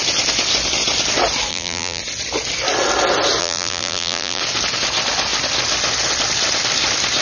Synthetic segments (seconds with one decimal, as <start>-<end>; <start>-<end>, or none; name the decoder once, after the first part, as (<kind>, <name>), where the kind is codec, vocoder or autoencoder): 1.5-2.0 (vocoder, BigVGAN v2); 3.4-4.4